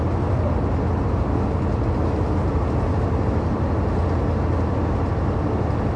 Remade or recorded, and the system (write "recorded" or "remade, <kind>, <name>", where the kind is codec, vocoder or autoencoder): recorded